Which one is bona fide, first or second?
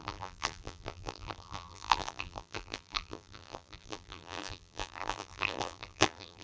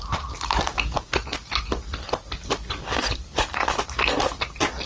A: second